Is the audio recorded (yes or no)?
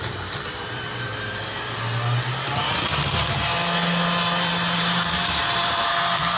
no